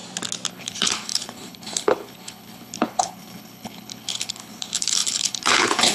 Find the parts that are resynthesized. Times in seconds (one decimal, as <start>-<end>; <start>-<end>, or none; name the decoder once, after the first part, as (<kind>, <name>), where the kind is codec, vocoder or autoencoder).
0.5-5.9 (codec, HILCodec)